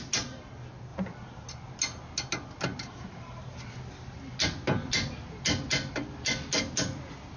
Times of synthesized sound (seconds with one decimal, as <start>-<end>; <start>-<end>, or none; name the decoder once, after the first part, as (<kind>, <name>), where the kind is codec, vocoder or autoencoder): none